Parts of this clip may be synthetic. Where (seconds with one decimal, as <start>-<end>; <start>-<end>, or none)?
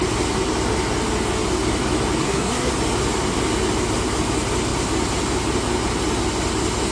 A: 2.2-2.7